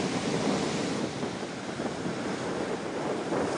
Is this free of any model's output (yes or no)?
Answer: yes